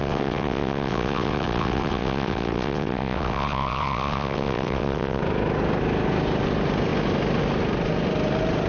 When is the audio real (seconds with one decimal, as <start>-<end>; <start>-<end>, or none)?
5.2-8.7